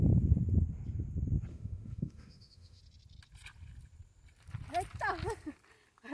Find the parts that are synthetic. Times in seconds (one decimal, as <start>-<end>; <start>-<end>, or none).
1.5-2.8